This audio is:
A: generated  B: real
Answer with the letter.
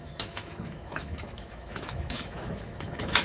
A